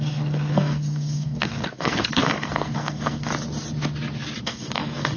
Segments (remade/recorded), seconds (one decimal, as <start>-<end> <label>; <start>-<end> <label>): 0.0-3.3 remade; 3.3-4.4 recorded; 4.4-5.2 remade